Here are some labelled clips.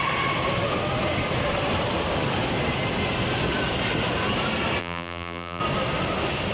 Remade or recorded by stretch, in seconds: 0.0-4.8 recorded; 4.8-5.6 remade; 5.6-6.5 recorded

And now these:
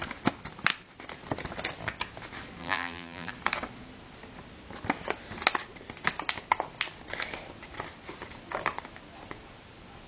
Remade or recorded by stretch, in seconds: 0.0-2.6 recorded; 2.6-3.3 remade; 3.3-10.1 recorded